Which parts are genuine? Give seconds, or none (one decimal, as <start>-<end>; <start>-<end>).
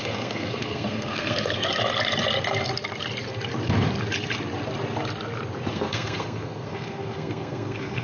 1.8-5.7